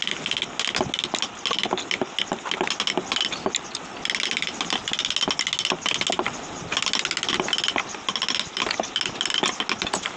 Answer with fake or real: real